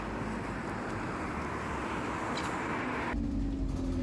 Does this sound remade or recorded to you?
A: recorded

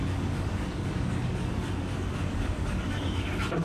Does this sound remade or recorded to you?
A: remade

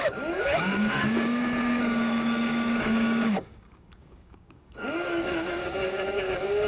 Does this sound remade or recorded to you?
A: remade